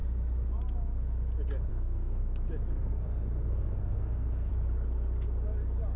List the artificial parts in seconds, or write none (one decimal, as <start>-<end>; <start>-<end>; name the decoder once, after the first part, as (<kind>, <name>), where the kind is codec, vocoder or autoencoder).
1.7-2.2 (codec, SNAC); 2.7-4.5